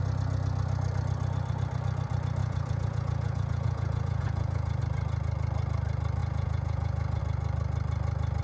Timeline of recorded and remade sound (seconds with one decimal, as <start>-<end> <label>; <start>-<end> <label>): 0.0-2.4 recorded; 2.4-4.8 remade; 4.8-6.2 recorded; 6.2-7.2 remade; 7.2-8.4 recorded